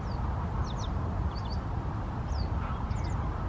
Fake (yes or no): no